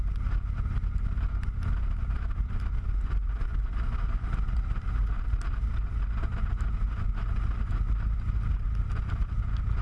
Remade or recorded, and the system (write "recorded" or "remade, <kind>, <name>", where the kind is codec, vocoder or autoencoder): recorded